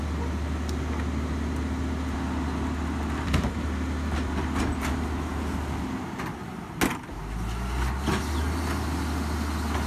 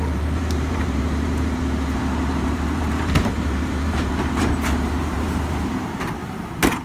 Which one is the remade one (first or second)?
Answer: second